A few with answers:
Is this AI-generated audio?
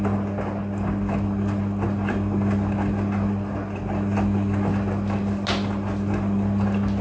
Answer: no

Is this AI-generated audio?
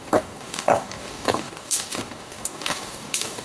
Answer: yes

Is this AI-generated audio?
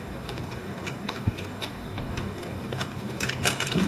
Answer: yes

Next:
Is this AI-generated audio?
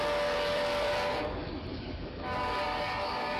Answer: yes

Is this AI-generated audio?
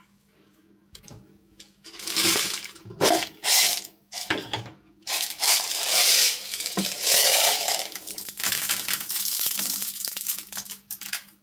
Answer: yes